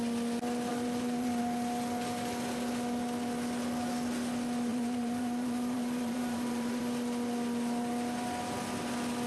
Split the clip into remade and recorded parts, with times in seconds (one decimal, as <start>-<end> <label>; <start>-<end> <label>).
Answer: 0.0-0.7 recorded; 0.7-1.4 remade; 1.4-4.7 recorded; 4.7-6.8 remade; 6.8-9.3 recorded